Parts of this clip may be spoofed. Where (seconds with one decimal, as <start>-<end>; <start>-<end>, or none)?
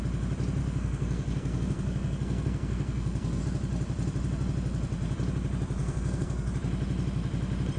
0.6-3.4; 5.8-6.5